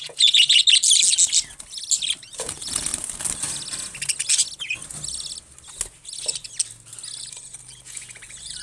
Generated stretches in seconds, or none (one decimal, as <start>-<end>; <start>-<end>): 0.0-0.6; 2.2-2.9; 7.2-8.6